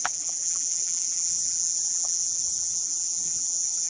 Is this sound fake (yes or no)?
yes